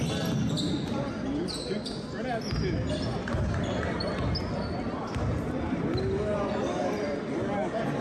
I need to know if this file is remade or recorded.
recorded